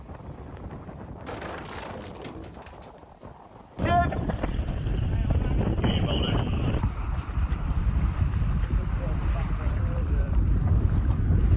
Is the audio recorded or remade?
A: remade